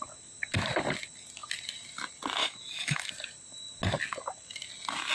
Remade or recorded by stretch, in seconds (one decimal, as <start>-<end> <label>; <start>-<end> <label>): 0.0-2.4 recorded; 2.4-3.1 remade; 3.1-5.1 recorded